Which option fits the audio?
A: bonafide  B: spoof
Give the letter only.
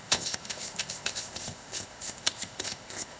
B